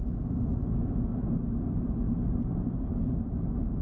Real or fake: real